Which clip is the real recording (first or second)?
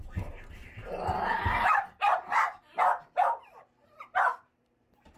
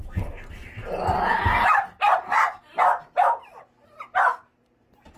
second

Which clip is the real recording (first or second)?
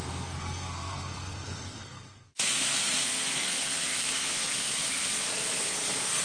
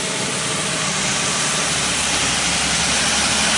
second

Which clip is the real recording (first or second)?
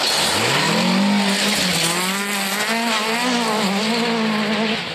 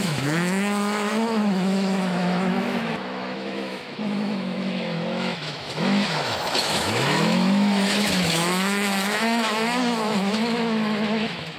first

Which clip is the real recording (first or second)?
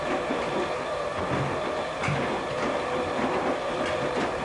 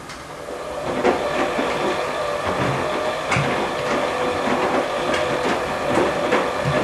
second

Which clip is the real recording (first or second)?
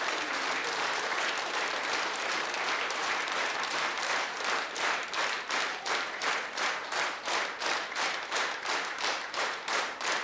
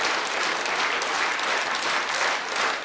second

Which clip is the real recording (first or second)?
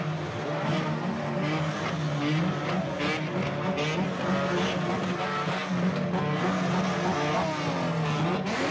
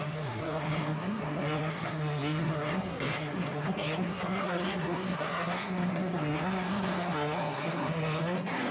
first